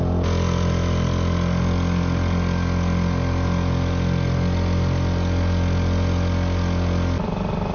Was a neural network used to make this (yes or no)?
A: no